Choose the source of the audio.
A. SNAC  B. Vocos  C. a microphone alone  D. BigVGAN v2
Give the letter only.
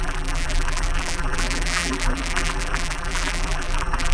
D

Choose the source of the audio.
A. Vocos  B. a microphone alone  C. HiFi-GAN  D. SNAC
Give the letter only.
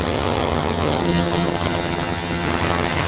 C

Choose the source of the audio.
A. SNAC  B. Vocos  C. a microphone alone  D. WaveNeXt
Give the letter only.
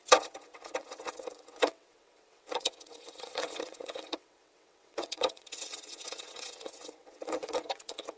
D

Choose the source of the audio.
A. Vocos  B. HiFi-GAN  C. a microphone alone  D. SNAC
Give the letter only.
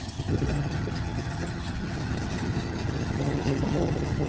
B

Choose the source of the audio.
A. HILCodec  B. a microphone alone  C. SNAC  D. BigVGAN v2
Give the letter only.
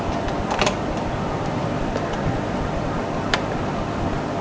D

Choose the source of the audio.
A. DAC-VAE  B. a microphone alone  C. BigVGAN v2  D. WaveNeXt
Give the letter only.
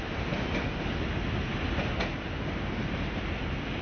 B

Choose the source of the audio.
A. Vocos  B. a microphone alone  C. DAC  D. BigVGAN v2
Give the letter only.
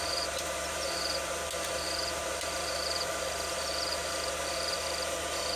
D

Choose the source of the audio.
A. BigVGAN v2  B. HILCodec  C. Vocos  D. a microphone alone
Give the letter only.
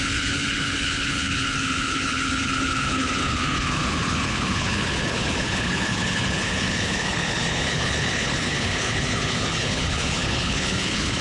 B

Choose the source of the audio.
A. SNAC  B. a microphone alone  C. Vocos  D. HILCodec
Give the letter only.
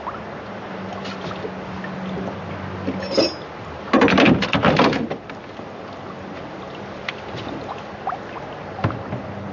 B